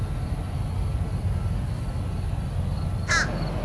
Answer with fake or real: real